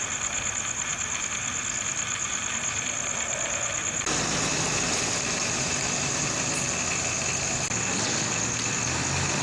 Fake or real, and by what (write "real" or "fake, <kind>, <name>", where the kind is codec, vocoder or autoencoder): real